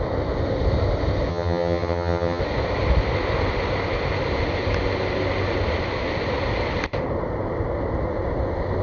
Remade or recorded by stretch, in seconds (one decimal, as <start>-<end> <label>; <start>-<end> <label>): 0.0-1.3 recorded; 1.3-2.4 remade; 2.4-8.8 recorded